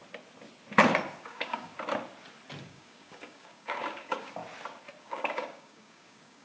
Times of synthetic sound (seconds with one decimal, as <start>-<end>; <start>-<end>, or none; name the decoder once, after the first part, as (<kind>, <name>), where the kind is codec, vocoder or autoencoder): 1.2-1.7 (codec, DAC); 2.6-4.4; 5.0-6.4